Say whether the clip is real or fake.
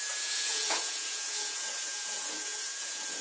fake